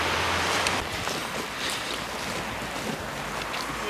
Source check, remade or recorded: recorded